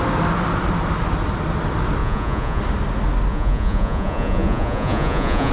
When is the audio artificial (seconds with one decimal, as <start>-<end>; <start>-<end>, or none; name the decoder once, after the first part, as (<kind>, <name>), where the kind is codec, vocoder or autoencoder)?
2.0-2.6 (vocoder, Vocos); 3.3-5.5